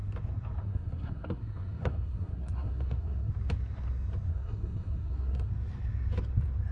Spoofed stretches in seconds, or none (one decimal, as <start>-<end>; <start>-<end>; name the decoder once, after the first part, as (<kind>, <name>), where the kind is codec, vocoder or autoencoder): 0.6-3.3 (codec, SNAC); 4.3-5.5